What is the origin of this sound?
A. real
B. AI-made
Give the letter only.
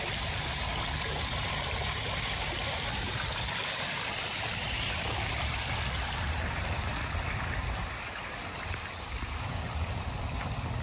B